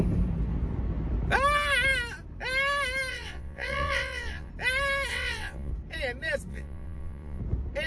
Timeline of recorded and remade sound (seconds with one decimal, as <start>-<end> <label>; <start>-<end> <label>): 0.0-3.1 recorded; 3.1-4.5 remade; 4.5-5.1 recorded; 5.1-5.7 remade; 5.7-6.5 recorded; 6.5-7.4 remade; 7.4-7.9 recorded

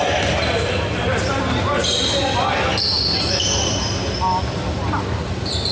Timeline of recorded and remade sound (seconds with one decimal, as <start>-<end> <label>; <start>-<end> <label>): 0.0-5.7 recorded